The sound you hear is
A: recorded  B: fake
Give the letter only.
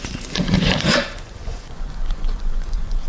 B